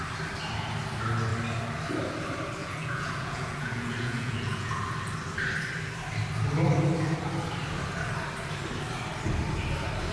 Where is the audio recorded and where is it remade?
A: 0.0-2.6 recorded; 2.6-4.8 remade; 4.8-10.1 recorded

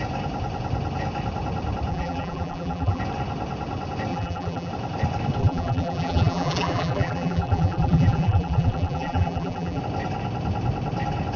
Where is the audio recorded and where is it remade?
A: 0.0-1.9 recorded; 1.9-3.0 remade; 3.0-4.1 recorded; 4.1-4.7 remade; 4.7-5.4 recorded; 5.4-9.8 remade; 9.8-11.4 recorded